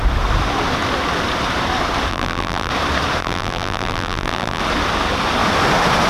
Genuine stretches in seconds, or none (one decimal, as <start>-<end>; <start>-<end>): 0.0-2.1; 2.7-3.2; 4.6-6.1

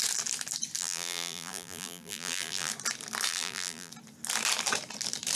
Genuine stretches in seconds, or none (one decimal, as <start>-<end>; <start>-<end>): 0.0-0.8; 2.7-3.3; 3.9-5.4

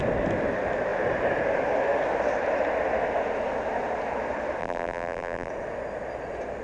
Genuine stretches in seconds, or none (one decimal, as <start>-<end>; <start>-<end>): 0.0-4.6; 5.5-6.6

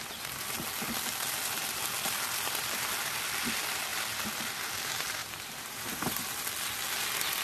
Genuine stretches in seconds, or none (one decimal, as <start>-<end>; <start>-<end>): 0.0-5.2; 6.2-7.4

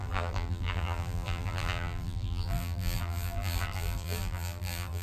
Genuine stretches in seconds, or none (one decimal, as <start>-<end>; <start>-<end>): none